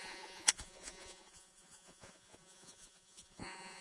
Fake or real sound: fake